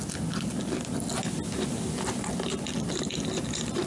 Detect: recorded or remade recorded